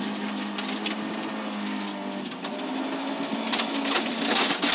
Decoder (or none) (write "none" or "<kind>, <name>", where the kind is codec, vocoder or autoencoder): none